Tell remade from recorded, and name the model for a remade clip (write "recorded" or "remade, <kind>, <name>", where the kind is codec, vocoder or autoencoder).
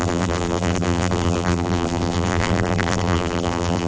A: remade, vocoder, BigVGAN v2